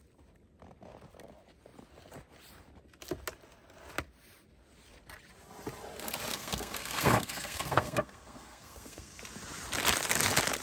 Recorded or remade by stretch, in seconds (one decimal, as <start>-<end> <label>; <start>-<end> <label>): 0.0-6.3 recorded; 6.3-9.2 remade; 9.2-10.6 recorded